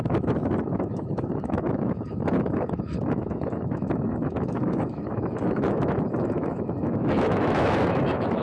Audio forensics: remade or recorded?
remade